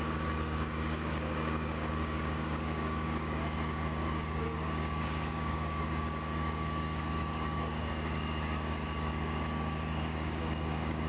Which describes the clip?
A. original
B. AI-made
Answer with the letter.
B